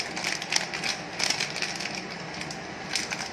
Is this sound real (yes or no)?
yes